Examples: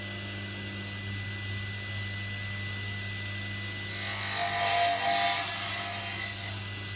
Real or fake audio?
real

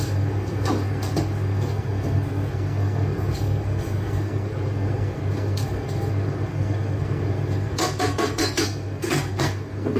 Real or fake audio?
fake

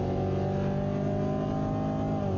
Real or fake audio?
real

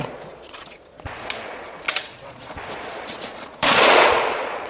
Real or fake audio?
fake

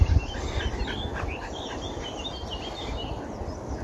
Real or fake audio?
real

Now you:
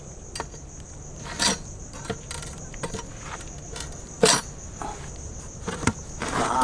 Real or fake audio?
real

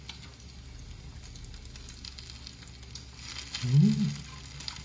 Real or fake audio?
real